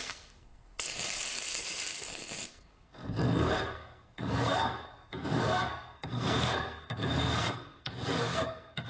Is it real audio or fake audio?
fake